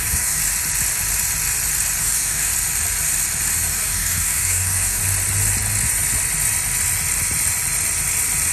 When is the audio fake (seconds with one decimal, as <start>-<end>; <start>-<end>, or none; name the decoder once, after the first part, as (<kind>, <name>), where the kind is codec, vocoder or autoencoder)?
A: 0.0-0.4 (codec, DAC); 2.0-2.5; 3.7-5.0